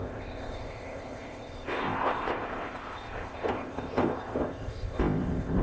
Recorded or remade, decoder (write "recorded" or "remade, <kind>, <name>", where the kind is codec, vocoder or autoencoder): remade, codec, ZipCodec